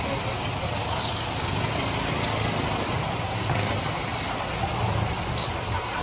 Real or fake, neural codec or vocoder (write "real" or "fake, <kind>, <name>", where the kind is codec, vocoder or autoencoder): real